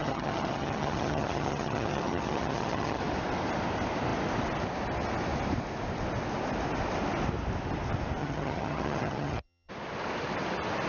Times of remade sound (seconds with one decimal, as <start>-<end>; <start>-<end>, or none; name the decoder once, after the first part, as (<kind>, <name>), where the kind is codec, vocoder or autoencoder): 0.0-3.0 (vocoder, HiFi-GAN); 8.2-9.7